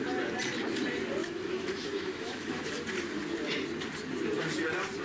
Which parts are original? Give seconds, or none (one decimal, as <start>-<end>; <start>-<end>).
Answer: 0.0-1.2; 2.6-5.0

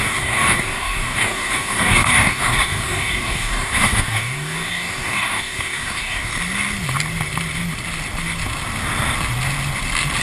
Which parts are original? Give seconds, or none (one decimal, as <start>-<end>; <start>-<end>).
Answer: 6.3-10.2